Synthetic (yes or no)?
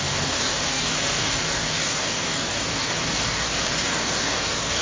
yes